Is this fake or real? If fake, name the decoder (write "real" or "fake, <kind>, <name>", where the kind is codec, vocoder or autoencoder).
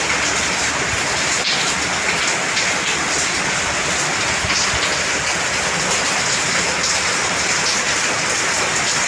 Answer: real